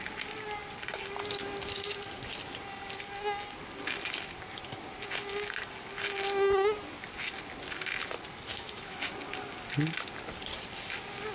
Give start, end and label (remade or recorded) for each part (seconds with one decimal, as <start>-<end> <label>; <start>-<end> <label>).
0.0-8.5 recorded; 8.5-9.1 remade; 9.1-11.3 recorded